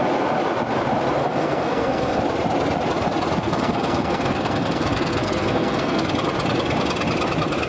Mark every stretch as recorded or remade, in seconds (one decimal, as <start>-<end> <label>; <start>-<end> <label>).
0.0-1.2 recorded; 1.2-2.2 remade; 2.2-3.4 recorded; 3.4-6.1 remade; 6.1-7.7 recorded